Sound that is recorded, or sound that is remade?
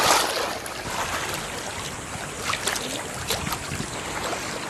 recorded